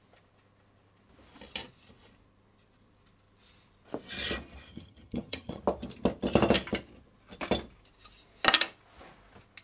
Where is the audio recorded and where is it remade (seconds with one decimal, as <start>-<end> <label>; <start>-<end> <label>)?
0.0-4.7 recorded; 4.7-5.6 remade; 5.6-9.6 recorded